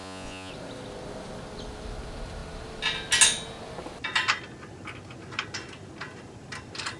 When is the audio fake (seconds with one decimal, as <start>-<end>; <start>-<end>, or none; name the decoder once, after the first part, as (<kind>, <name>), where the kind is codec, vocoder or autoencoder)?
0.0-0.5 (vocoder, Vocos)